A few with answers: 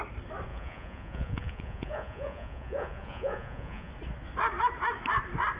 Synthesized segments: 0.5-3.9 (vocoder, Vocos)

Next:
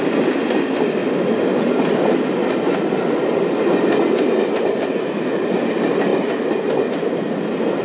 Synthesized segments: none

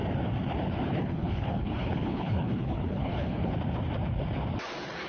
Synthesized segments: 0.9-3.5 (codec, HILCodec)

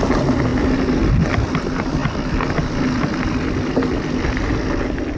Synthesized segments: none

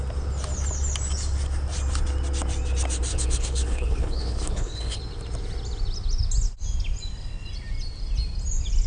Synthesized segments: 3.1-5.0 (codec, HILCodec)

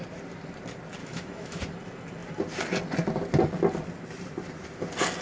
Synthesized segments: 1.0-1.6 (autoencoder, DAC-VAE)

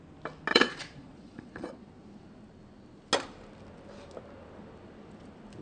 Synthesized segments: 0.5-1.9 (vocoder, Vocos)

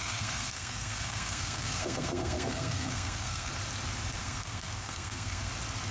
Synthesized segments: 0.0-3.5 (codec, SNAC); 4.2-5.5